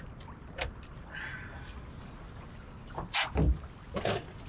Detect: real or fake real